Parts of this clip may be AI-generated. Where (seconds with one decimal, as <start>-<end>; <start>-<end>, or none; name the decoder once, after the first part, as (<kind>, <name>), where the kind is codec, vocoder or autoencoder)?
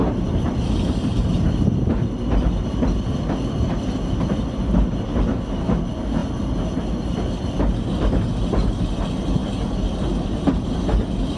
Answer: 5.3-5.8 (autoencoder, DAC-VAE)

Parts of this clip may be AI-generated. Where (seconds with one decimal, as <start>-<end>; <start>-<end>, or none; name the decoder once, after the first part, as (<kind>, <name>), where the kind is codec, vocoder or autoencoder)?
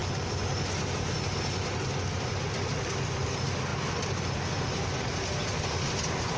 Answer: none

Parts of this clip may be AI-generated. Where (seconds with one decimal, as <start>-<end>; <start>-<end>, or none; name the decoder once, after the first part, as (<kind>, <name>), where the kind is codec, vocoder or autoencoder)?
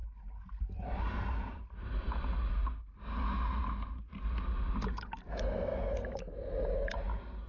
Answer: 0.9-2.4 (vocoder, BigVGAN v2); 3.6-5.7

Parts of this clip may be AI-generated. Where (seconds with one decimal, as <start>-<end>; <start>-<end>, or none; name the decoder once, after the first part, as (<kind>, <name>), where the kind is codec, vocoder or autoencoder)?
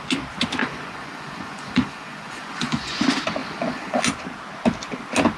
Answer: 0.6-3.0 (vocoder, Vocos); 3.4-4.0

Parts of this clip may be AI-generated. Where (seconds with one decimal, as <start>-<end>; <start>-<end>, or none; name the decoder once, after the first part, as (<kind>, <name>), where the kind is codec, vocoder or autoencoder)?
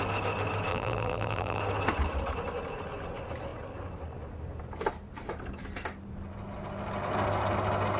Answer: 0.7-1.6 (vocoder, BigVGAN v2)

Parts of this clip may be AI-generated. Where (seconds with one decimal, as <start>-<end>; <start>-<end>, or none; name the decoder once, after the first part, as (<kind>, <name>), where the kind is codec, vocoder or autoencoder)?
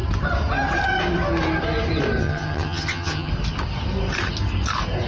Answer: 2.2-3.3 (vocoder, HiFi-GAN)